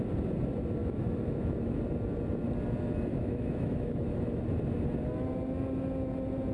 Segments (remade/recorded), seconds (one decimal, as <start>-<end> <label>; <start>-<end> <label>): 0.0-0.8 recorded; 0.8-1.8 remade; 1.8-3.1 recorded; 3.1-4.4 remade; 4.4-6.5 recorded